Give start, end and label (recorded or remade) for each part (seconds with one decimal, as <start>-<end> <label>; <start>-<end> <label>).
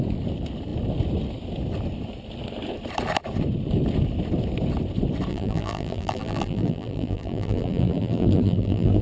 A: 0.0-5.3 recorded; 5.3-9.0 remade